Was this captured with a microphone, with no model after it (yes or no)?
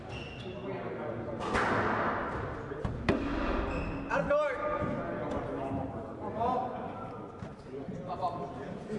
yes